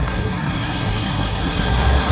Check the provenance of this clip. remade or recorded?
remade